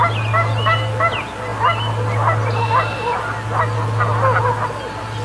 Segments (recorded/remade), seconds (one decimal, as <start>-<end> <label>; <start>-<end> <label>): 0.0-5.2 recorded